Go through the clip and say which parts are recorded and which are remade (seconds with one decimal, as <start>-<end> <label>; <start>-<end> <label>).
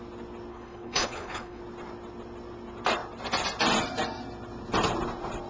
0.0-0.5 recorded; 0.5-1.6 remade; 1.6-5.5 recorded